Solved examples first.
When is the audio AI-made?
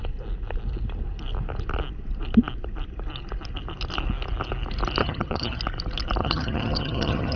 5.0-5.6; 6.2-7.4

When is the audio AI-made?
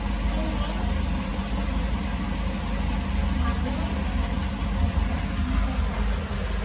none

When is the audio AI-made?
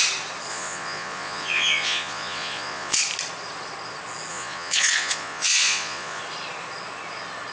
0.5-3.0; 4.3-6.2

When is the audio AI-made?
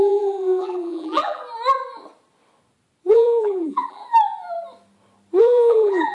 0.0-1.4; 3.1-4.0; 5.4-6.1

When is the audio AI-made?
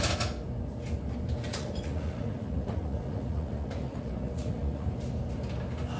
1.5-4.9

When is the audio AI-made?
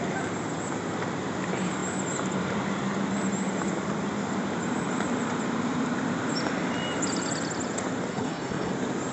8.1-8.7